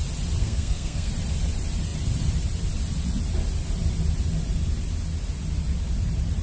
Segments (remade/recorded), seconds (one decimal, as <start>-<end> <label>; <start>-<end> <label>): 0.0-0.4 recorded; 0.4-1.1 remade; 1.1-6.4 recorded